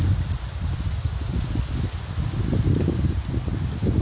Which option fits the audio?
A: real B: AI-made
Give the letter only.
B